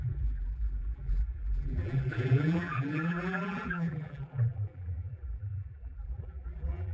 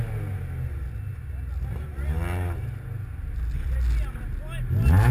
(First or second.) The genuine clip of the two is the second